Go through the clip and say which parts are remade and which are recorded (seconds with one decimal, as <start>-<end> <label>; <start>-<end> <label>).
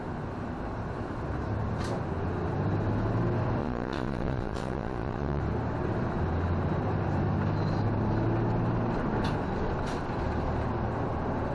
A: 0.0-3.6 recorded; 3.6-5.4 remade; 5.4-11.5 recorded